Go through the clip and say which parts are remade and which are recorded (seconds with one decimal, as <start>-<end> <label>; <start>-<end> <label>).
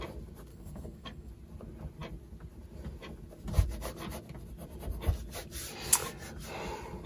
0.0-0.5 recorded; 0.5-1.3 remade; 1.3-7.1 recorded